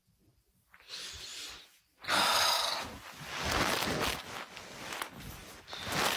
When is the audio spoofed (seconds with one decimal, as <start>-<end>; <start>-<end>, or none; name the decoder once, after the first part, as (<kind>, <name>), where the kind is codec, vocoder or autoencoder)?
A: none